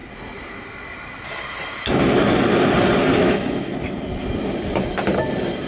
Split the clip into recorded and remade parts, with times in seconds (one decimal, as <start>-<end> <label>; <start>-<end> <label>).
0.0-3.2 recorded; 3.2-3.7 remade; 3.7-5.7 recorded